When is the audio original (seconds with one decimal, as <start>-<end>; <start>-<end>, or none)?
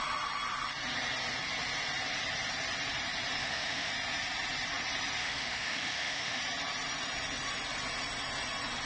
0.0-3.4; 3.9-5.2; 6.4-8.9